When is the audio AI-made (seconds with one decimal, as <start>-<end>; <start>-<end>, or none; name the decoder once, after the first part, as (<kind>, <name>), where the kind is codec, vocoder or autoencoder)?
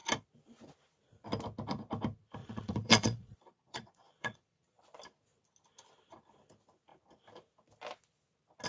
2.4-4.8 (vocoder, Vocos)